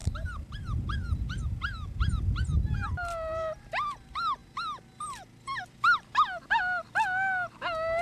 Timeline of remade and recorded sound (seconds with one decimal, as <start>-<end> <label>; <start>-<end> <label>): 0.0-1.4 remade; 1.4-8.0 recorded

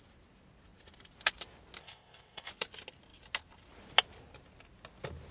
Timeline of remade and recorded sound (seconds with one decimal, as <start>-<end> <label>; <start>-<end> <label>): 0.0-1.8 recorded; 1.8-2.5 remade; 2.5-5.3 recorded